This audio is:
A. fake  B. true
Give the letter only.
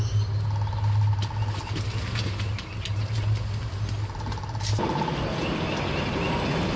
B